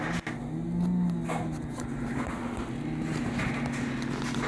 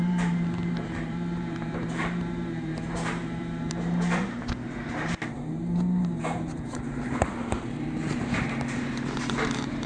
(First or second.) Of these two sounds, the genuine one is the first